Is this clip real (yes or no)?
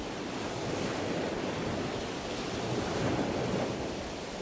yes